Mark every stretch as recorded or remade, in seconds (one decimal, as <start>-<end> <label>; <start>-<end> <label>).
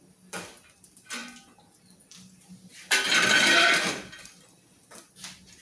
0.0-5.6 recorded